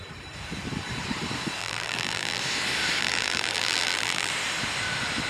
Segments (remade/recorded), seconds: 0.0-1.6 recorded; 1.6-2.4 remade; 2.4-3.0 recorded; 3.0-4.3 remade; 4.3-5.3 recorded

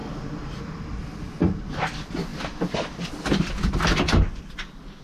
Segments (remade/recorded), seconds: 0.0-2.3 recorded; 2.3-3.1 remade; 3.1-5.0 recorded

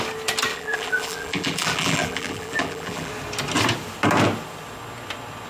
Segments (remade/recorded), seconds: 0.0-0.5 recorded; 0.5-3.1 remade; 3.1-5.5 recorded